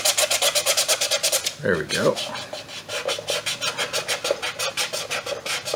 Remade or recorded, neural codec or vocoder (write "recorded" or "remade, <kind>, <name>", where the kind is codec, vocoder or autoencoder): recorded